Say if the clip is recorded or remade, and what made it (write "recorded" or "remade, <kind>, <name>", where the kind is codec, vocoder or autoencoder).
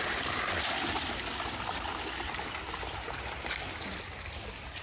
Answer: recorded